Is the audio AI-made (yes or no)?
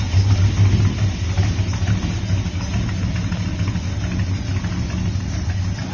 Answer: no